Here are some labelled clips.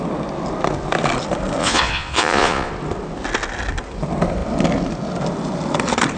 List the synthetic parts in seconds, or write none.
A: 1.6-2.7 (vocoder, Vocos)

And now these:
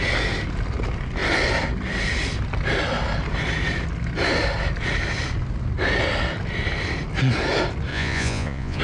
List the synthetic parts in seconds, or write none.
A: 7.9-8.8 (vocoder, Vocos)

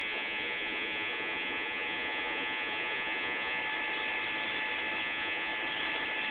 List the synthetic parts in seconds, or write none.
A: 0.0-3.6 (vocoder, Vocos); 5.0-5.5

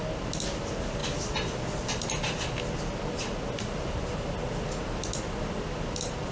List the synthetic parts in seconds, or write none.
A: none